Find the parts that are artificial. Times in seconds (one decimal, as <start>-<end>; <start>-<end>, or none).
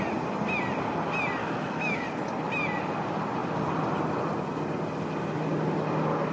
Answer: 1.4-2.0